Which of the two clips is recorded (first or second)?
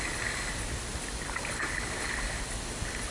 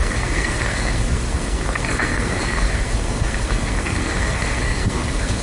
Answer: first